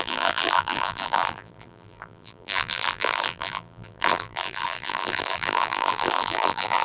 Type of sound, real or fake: fake